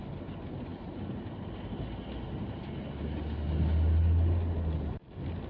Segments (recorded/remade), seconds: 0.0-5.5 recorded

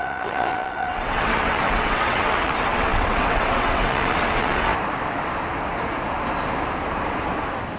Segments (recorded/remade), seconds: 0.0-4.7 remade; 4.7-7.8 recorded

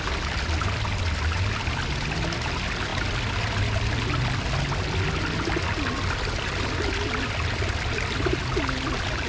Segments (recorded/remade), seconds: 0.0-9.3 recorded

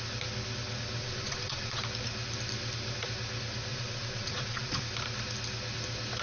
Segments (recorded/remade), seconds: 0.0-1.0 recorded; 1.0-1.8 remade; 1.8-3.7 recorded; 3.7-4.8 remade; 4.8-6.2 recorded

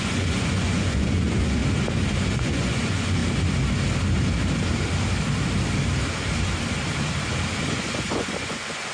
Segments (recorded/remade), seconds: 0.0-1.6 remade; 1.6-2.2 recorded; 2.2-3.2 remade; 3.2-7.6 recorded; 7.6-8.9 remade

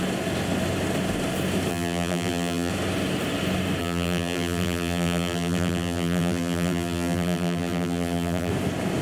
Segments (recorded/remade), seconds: 0.0-1.7 recorded; 1.7-2.7 remade; 2.7-3.8 recorded; 3.8-8.5 remade; 8.5-9.0 recorded

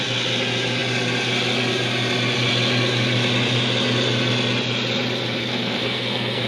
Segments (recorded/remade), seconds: 0.0-5.4 recorded; 5.4-6.5 remade